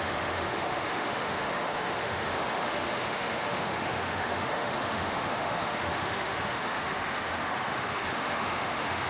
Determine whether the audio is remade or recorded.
remade